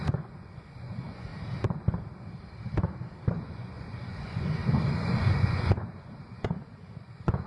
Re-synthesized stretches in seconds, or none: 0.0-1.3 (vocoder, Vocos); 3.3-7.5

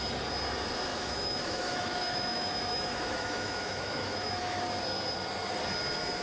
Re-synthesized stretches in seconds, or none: 0.9-4.6 (autoencoder, DAC-VAE)